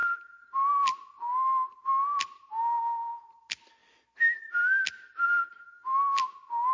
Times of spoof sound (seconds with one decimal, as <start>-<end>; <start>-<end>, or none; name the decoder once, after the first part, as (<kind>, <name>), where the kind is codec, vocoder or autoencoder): none